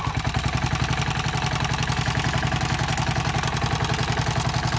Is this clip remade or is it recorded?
recorded